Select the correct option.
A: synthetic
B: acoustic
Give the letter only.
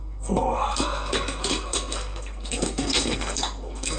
A